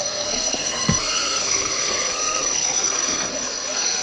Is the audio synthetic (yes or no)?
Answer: yes